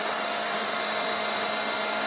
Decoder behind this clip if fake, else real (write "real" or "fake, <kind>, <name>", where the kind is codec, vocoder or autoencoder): real